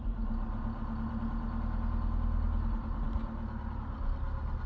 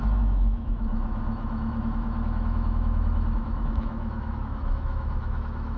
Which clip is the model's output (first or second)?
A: second